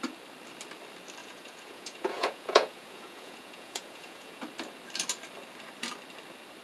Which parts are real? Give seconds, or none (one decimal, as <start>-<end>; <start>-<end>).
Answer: 0.0-1.2; 4.4-6.6